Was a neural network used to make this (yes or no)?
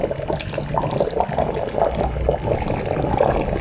no